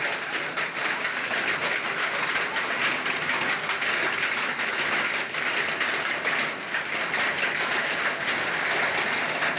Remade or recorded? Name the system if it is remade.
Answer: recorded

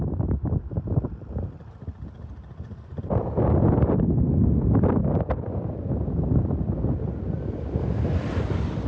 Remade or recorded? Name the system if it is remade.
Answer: recorded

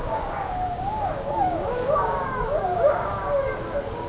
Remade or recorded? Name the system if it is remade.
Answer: remade, codec, DAC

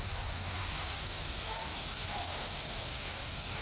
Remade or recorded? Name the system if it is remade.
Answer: remade, codec, DAC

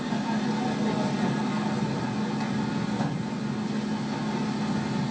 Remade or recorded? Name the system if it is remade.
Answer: recorded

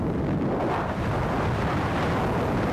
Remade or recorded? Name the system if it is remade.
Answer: recorded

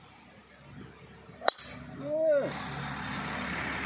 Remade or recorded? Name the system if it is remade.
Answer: recorded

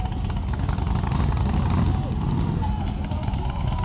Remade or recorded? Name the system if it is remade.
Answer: recorded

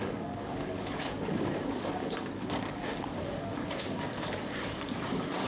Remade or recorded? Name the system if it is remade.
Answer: remade, codec, DAC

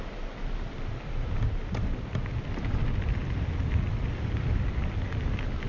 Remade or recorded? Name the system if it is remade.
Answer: recorded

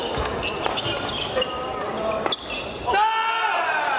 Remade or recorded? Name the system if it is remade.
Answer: recorded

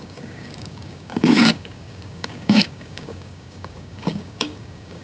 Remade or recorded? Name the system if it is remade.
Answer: remade, codec, DAC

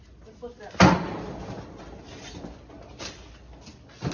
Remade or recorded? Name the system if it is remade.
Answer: recorded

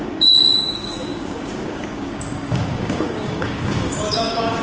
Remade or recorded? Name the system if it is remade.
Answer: remade, codec, DAC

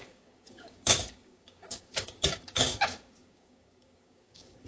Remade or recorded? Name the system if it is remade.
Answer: remade, codec, DAC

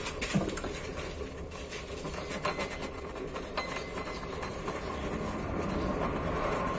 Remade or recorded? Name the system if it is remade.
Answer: recorded